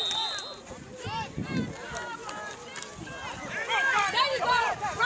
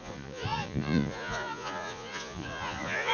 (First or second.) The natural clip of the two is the first